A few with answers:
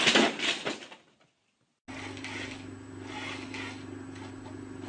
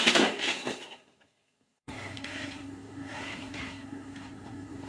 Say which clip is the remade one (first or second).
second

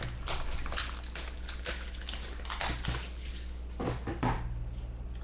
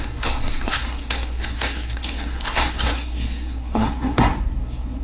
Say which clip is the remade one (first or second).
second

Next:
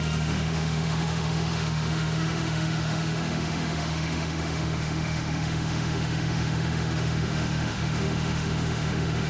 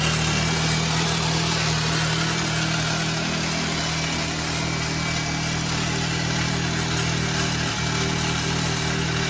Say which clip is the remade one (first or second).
first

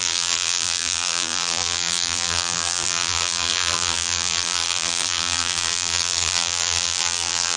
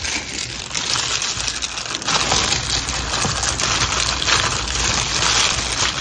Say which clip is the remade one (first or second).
first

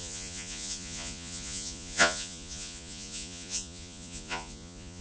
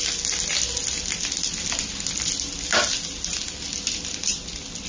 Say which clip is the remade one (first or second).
first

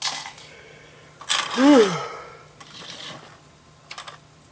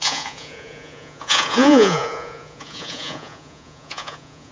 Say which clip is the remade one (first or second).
second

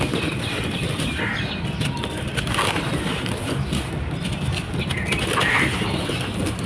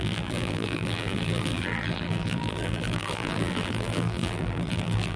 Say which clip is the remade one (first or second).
second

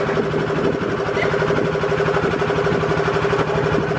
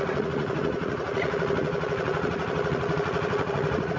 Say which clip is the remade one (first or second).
second